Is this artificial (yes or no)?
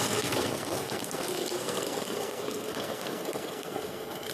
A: yes